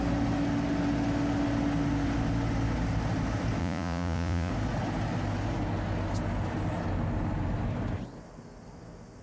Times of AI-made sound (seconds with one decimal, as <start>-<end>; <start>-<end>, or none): 3.6-4.5